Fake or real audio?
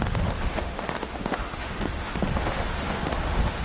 fake